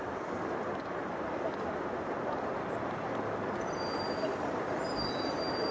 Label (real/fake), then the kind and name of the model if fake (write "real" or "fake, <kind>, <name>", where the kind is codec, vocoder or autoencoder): fake, vocoder, BigVGAN v2